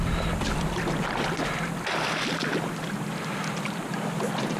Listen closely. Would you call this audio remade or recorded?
recorded